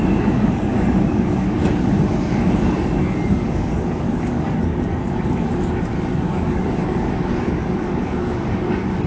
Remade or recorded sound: remade